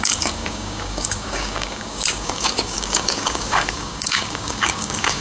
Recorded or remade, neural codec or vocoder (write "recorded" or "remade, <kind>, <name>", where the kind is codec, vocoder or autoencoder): remade, codec, DAC